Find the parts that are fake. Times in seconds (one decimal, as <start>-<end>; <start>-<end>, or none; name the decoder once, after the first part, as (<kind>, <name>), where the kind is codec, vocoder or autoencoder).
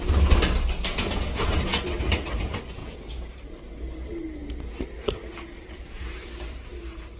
0.9-1.8 (vocoder, Vocos); 2.8-3.4